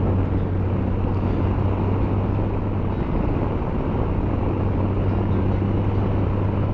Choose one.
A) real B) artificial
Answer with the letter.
A